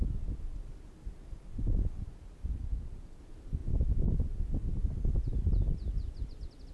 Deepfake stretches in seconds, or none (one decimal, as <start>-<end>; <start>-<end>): 2.6-3.2